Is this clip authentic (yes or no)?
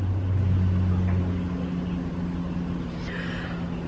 yes